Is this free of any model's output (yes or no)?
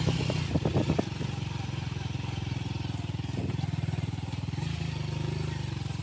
yes